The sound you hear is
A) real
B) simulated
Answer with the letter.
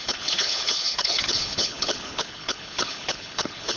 B